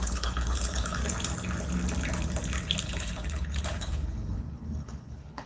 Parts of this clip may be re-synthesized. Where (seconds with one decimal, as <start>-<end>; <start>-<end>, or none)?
0.0-1.0; 2.8-5.5